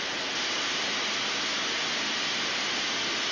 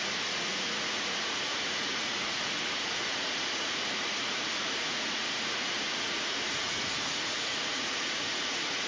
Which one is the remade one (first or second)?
second